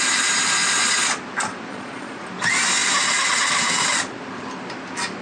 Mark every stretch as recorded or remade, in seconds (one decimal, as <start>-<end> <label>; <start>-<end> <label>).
0.0-1.7 recorded; 1.7-2.2 remade; 2.2-5.2 recorded